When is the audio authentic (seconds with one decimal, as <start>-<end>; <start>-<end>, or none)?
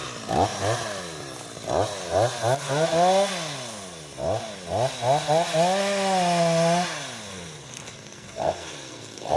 0.0-7.3